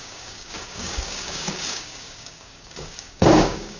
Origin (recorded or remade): remade